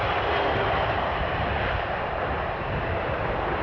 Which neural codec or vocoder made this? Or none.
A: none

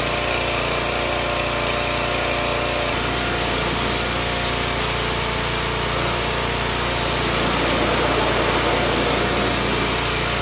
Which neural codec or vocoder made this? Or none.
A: none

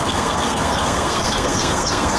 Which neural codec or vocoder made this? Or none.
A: codec, SNAC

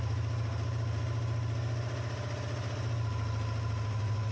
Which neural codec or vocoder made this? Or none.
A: none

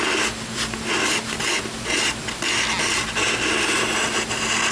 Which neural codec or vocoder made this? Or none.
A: none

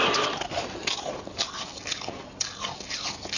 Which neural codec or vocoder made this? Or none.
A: none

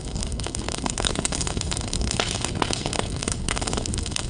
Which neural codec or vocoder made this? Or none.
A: codec, SNAC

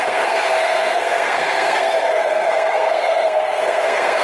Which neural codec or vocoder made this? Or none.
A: codec, SNAC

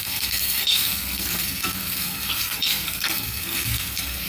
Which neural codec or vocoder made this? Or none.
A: codec, SNAC